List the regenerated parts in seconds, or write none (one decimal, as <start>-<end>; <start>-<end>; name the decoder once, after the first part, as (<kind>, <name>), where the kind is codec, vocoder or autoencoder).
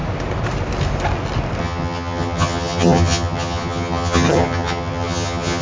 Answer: 1.6-5.6 (vocoder, HiFi-GAN)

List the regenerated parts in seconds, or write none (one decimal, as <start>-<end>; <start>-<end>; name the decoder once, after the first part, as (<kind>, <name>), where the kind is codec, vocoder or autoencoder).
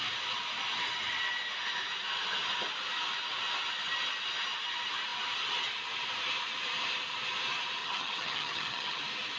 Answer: 7.8-9.0 (vocoder, HiFi-GAN)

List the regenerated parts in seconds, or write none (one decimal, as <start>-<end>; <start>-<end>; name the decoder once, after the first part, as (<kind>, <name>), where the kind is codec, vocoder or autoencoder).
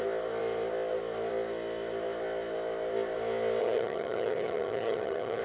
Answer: 3.6-5.4 (vocoder, HiFi-GAN)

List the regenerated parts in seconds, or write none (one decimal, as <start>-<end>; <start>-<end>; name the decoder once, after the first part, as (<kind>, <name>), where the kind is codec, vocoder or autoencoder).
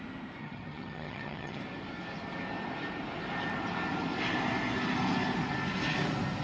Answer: 0.4-1.6 (vocoder, HiFi-GAN)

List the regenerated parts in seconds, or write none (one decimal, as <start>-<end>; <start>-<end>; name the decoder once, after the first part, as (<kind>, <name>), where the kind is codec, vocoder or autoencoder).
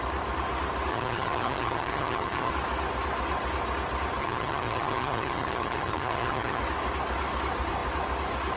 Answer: 0.9-2.5 (vocoder, HiFi-GAN); 4.2-6.6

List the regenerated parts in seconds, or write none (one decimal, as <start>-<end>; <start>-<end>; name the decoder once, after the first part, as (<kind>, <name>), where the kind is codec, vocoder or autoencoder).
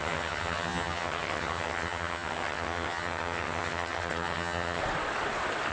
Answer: 0.0-4.8 (vocoder, HiFi-GAN)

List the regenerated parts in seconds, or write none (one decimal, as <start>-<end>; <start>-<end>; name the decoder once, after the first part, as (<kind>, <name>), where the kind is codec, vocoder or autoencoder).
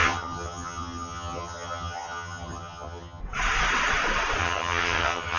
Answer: 0.0-3.2 (vocoder, HiFi-GAN); 4.4-5.4